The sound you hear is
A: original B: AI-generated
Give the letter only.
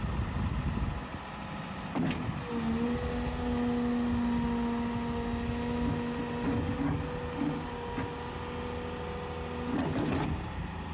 A